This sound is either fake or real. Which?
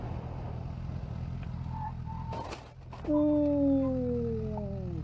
real